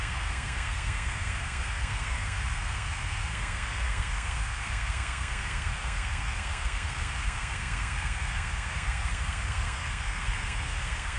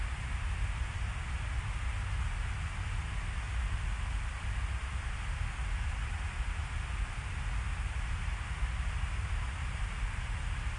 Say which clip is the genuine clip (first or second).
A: second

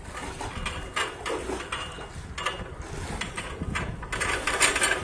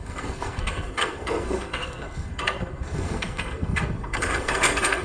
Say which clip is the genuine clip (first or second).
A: first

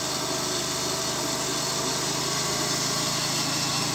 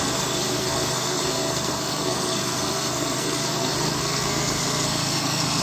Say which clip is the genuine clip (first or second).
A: first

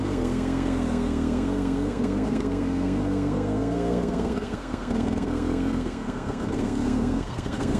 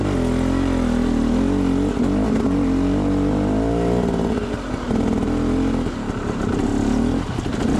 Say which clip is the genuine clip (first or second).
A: second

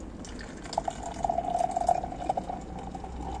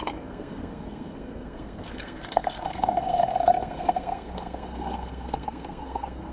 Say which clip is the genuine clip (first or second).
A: first